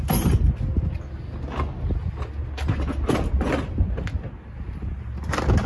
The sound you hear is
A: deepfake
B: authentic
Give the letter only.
B